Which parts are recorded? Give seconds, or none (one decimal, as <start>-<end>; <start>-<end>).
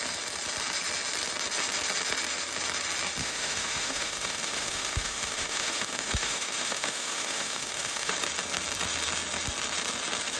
0.0-3.2; 8.1-10.4